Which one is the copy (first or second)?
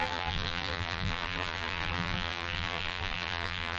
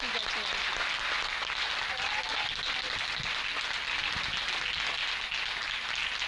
first